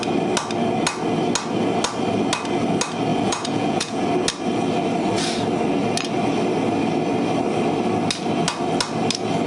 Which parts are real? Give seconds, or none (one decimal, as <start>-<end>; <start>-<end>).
0.0-3.1; 4.0-9.5